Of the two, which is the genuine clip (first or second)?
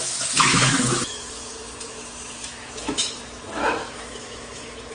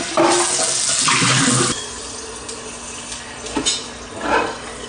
second